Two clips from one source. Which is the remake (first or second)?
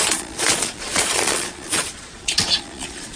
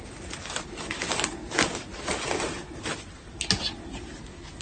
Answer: first